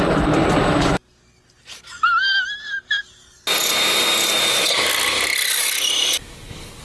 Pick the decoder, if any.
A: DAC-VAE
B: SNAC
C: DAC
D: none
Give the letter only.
D